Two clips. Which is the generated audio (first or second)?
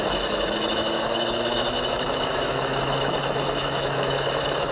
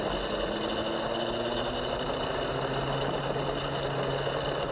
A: first